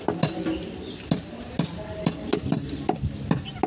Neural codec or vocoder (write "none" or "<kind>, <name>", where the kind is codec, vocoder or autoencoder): none